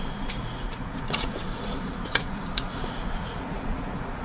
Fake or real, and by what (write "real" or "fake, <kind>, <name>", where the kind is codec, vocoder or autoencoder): fake, vocoder, Vocos